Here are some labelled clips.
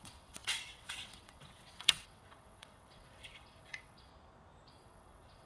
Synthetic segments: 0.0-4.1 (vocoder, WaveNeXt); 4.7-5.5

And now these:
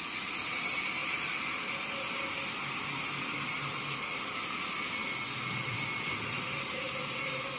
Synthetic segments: none

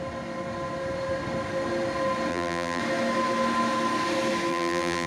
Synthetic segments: 2.3-2.8 (vocoder, BigVGAN v2); 4.5-5.1

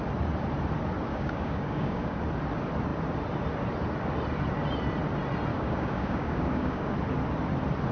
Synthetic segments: 1.1-2.2 (codec, DAC); 5.5-6.9

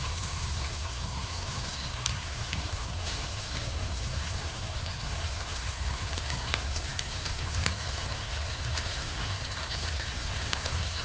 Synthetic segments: 0.0-11.0 (codec, SNAC)